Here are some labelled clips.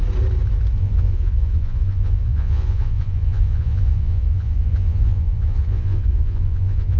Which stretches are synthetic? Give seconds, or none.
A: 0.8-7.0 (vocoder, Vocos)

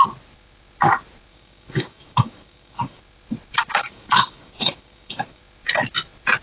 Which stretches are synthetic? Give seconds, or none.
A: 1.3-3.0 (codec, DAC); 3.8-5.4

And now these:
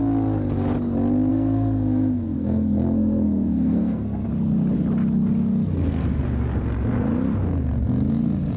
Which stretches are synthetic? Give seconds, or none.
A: 1.3-4.3 (codec, SNAC); 5.4-6.2

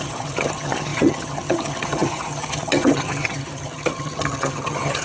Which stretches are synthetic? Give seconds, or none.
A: 0.0-5.0 (vocoder, HiFi-GAN)

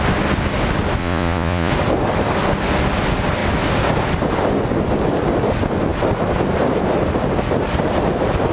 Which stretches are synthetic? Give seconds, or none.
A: 1.0-1.7 (vocoder, Vocos)

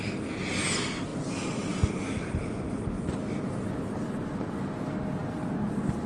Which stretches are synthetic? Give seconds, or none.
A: none

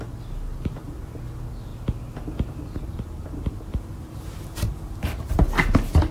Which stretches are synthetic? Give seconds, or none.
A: 3.7-5.4 (vocoder, BigVGAN v2)

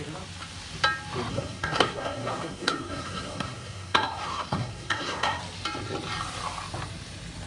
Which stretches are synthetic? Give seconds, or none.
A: 1.3-5.4 (codec, SNAC)